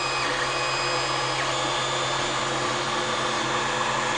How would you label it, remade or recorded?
recorded